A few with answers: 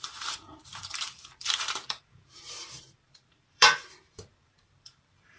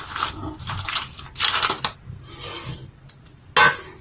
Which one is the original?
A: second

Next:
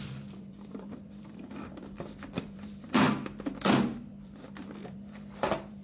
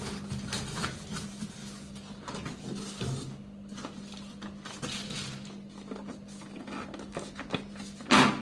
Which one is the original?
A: second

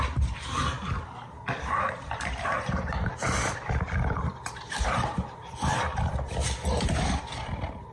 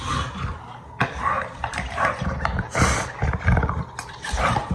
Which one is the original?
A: second